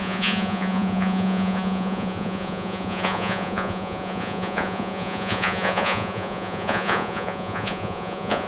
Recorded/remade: remade